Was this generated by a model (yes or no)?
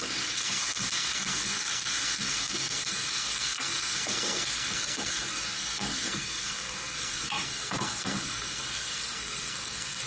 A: yes